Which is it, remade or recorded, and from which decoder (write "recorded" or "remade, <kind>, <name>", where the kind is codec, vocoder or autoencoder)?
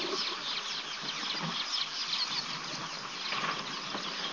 recorded